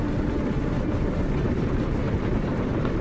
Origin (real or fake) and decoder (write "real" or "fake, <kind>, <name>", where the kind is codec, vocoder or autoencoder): fake, vocoder, BigVGAN v2